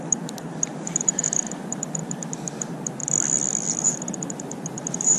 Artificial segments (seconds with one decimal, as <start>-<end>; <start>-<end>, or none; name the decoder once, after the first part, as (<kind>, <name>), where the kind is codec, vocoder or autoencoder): 0.0-2.0 (vocoder, BigVGAN v2); 2.6-3.0; 3.8-5.2